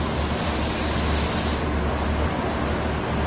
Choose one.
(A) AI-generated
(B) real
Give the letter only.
B